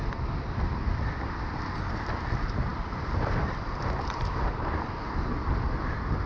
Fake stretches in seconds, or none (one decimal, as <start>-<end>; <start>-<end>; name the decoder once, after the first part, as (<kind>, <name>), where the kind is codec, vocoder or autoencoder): none